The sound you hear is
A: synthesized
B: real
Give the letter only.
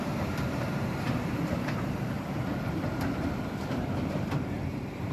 A